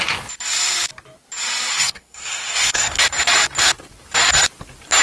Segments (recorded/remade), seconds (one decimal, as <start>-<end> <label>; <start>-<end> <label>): 0.0-1.7 recorded; 1.7-3.0 remade; 3.0-5.0 recorded